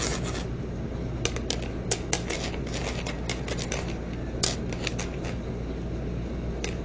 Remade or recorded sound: recorded